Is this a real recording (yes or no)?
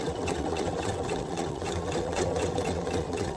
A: no